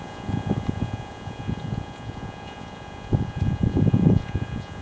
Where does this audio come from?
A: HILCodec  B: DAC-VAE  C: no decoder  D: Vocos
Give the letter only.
D